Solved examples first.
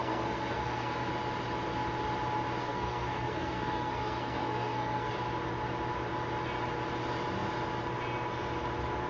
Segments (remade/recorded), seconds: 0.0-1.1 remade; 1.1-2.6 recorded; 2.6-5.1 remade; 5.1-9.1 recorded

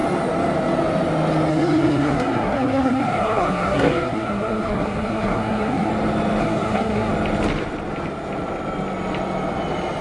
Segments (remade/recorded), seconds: 0.0-1.5 recorded; 1.5-5.9 remade; 5.9-6.4 recorded; 6.4-7.1 remade; 7.1-10.0 recorded

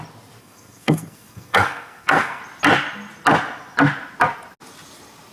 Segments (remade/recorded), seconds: 0.0-0.4 recorded; 0.4-2.4 remade; 2.4-5.3 recorded

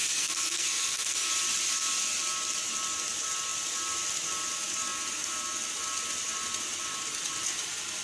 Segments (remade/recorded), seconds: 0.0-1.3 remade; 1.3-8.0 recorded

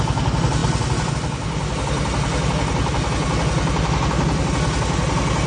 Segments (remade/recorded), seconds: 0.0-5.5 recorded